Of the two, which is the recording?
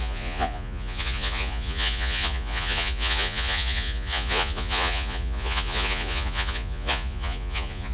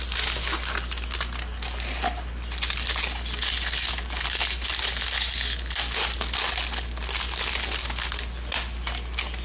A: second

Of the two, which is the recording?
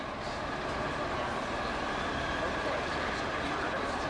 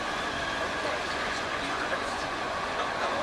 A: first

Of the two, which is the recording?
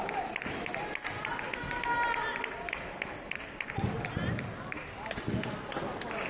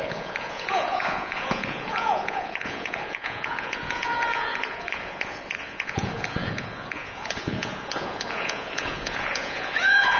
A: first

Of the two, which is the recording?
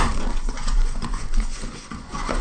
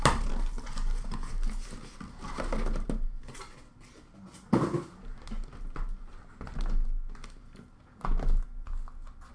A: second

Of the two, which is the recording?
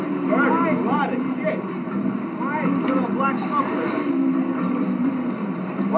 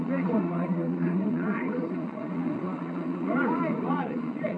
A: first